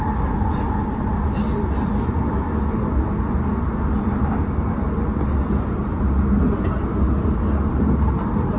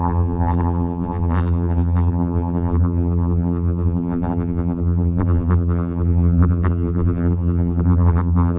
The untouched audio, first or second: first